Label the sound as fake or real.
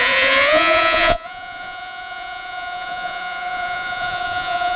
fake